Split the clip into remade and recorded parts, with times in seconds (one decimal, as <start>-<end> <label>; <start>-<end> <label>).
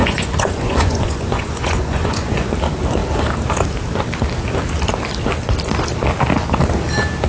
0.0-2.5 remade; 2.5-7.3 recorded